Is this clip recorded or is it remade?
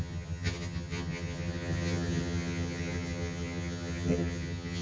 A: remade